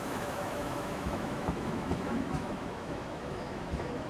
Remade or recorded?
remade